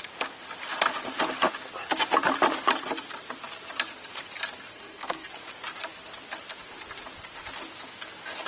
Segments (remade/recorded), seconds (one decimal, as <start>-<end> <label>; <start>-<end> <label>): 0.0-4.7 recorded; 4.7-5.3 remade; 5.3-8.5 recorded